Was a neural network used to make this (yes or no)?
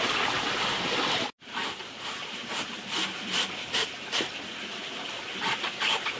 no